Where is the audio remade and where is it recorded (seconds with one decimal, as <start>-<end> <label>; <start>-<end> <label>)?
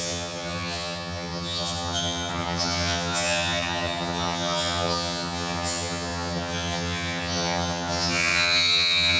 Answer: 0.0-9.2 remade